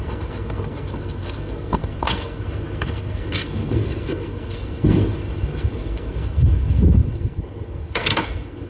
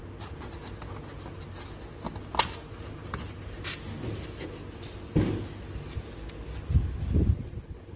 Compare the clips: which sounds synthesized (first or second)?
first